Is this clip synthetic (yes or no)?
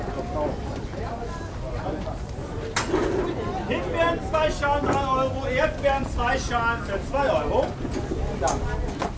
no